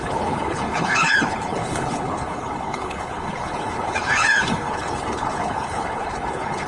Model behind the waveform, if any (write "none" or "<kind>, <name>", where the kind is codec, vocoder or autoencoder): codec, HILCodec